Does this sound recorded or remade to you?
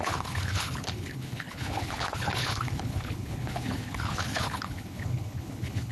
remade